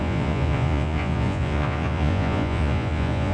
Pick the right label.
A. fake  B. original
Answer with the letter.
A